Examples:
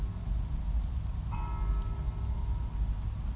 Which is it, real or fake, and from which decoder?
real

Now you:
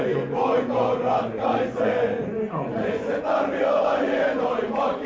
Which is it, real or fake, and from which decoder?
fake, vocoder, Vocos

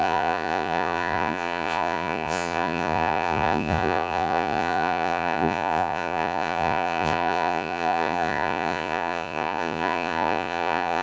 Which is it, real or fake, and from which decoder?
fake, vocoder, Vocos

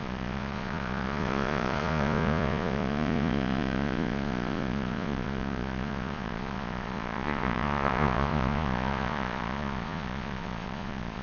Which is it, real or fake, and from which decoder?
fake, vocoder, Vocos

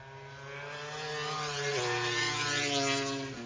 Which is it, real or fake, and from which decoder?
real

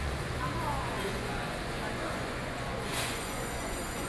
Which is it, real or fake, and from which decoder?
fake, vocoder, Vocos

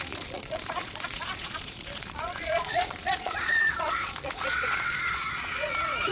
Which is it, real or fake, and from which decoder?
fake, vocoder, Vocos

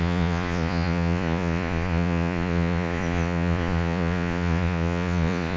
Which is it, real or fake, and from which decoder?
fake, vocoder, Vocos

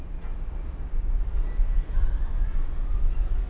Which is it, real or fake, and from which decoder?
real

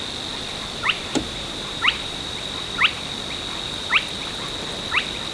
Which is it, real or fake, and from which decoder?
real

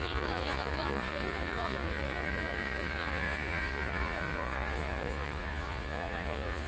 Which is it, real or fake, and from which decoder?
fake, vocoder, Vocos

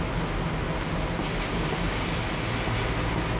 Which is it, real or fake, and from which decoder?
real